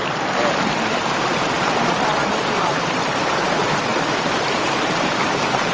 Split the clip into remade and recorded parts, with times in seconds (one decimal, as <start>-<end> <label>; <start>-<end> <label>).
0.0-5.7 remade

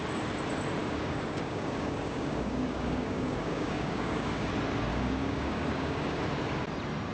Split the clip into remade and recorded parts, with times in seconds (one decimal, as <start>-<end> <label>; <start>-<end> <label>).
0.0-0.8 recorded; 0.8-4.5 remade; 4.5-4.9 recorded; 4.9-6.2 remade; 6.2-7.1 recorded

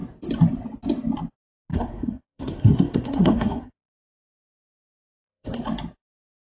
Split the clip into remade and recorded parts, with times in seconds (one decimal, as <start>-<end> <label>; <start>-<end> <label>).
0.0-1.7 recorded; 1.7-5.6 remade; 5.6-6.5 recorded

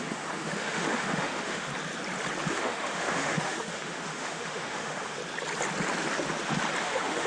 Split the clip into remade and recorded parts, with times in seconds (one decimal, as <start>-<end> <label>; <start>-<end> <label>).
0.0-1.7 remade; 1.7-2.5 recorded; 2.5-5.2 remade; 5.2-6.8 recorded; 6.8-7.3 remade

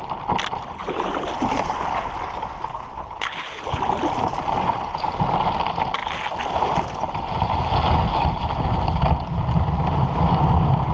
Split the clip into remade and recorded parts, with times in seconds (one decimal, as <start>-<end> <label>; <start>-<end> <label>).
0.0-2.7 recorded; 2.7-3.8 remade; 3.8-10.9 recorded

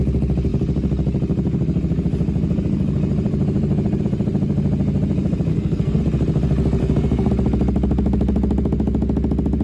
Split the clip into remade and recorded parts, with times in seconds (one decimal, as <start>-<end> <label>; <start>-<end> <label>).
0.0-5.5 recorded; 5.5-6.0 remade; 6.0-6.8 recorded; 6.8-7.3 remade; 7.3-9.6 recorded

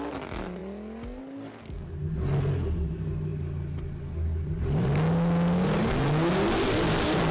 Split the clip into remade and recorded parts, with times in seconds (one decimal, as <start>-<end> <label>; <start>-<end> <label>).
0.0-7.3 recorded

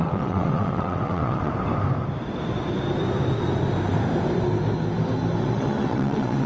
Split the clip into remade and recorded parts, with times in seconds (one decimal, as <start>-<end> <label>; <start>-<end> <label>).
0.0-1.5 remade; 1.5-5.4 recorded; 5.4-6.5 remade